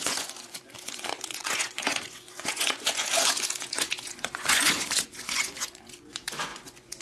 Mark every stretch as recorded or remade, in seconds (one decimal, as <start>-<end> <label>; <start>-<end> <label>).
0.0-7.0 remade